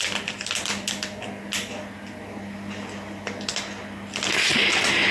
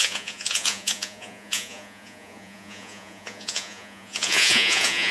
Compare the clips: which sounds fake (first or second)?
second